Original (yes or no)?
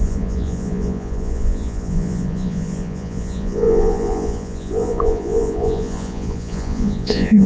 no